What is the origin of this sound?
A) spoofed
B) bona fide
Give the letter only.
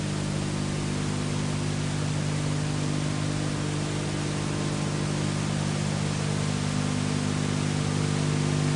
B